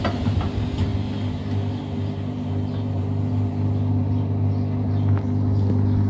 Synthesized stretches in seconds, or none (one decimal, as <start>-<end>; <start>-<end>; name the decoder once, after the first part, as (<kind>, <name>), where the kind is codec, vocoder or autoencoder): none